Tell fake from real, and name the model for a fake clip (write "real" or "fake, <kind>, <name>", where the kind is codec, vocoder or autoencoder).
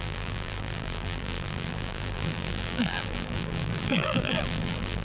fake, vocoder, BigVGAN v2